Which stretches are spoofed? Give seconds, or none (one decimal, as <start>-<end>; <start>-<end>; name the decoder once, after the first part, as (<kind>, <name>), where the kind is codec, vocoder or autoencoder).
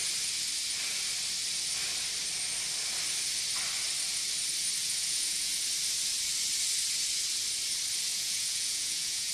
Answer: 4.8-5.5 (vocoder, Vocos); 8.1-9.3